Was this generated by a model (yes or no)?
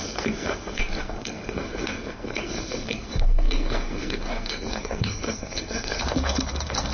yes